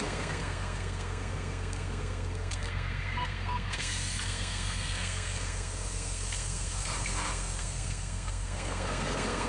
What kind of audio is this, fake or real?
fake